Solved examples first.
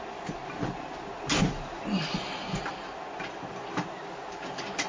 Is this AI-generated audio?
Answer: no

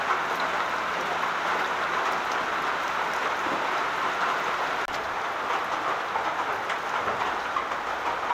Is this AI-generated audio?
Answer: no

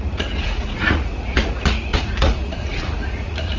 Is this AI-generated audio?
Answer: yes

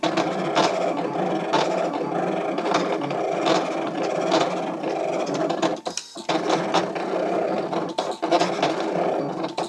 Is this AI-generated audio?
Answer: no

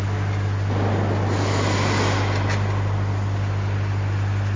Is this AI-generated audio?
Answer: no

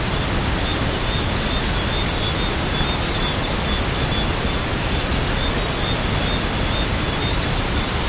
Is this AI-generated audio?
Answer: no